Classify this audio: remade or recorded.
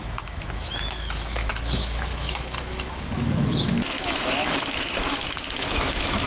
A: remade